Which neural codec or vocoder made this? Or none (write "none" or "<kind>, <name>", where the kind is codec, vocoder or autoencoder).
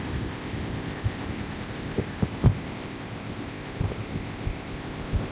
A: codec, ZipCodec